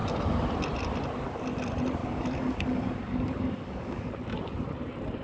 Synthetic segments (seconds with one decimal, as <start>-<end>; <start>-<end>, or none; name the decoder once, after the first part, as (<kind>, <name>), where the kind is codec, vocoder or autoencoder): 2.0-4.1 (codec, DAC)